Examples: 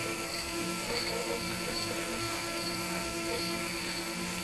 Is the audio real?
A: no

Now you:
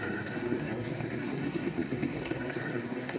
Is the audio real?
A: no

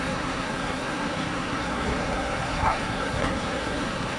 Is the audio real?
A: no